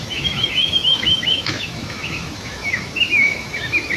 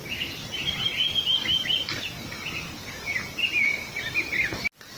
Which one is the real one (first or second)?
second